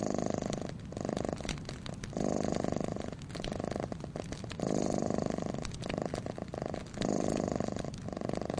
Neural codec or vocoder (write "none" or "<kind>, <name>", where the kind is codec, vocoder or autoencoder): none